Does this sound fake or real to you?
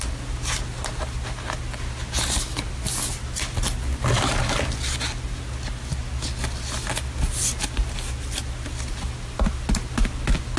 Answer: real